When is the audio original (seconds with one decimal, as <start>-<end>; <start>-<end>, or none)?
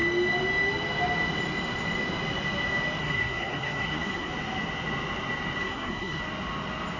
0.0-3.0; 4.3-5.6; 6.2-7.0